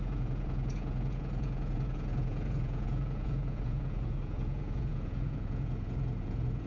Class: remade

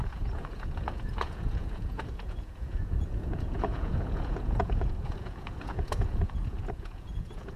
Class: remade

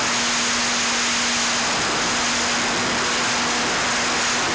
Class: recorded